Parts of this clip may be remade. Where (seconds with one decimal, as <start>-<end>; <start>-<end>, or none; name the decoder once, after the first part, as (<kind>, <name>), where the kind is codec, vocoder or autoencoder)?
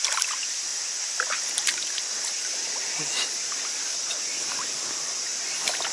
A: none